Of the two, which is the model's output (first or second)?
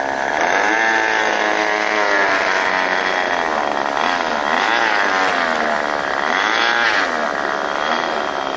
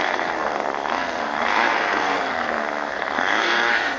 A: second